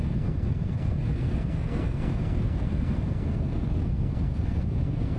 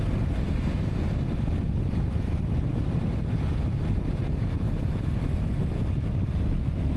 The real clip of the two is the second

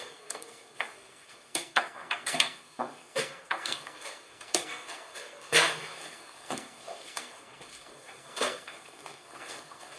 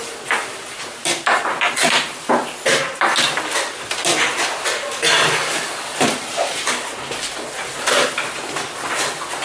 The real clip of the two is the second